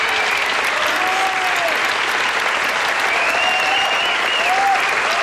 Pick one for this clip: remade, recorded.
recorded